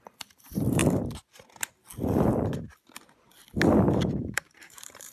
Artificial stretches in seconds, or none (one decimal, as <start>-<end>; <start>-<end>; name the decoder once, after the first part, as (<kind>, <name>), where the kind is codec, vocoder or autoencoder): 0.0-0.8 (vocoder, BigVGAN v2); 3.9-5.1

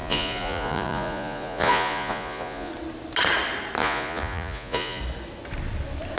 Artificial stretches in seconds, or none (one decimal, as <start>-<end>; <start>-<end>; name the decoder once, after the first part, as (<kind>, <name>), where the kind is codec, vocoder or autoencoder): 0.0-2.7 (vocoder, Vocos); 3.8-5.0